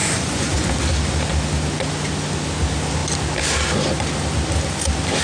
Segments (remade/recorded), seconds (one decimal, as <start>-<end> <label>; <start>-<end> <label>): 0.0-0.7 remade; 0.7-5.2 recorded

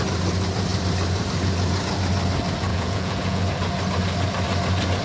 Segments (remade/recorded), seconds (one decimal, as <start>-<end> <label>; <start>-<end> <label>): 0.0-2.7 recorded; 2.7-3.4 remade; 3.4-5.0 recorded